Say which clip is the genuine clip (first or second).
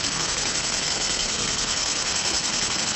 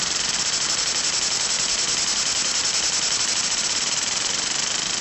second